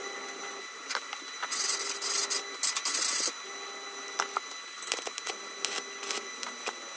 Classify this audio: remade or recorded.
recorded